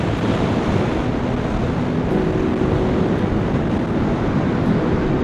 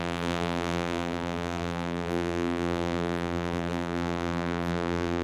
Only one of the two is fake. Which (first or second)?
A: second